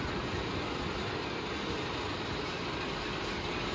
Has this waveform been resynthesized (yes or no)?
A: no